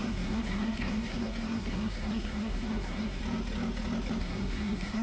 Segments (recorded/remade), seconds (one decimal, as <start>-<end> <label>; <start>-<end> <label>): 0.0-3.2 remade; 3.2-4.2 recorded; 4.2-5.0 remade